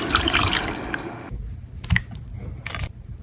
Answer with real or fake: real